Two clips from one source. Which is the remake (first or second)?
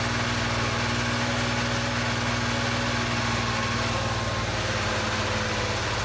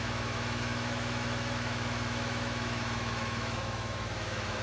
second